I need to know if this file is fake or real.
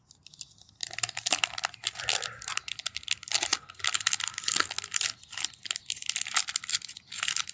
real